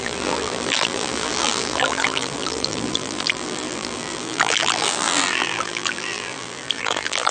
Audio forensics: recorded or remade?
remade